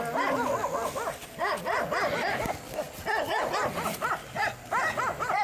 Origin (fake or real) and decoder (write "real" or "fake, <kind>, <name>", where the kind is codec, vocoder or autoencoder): real